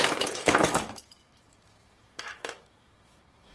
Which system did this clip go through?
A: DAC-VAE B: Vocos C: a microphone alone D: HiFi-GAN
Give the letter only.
A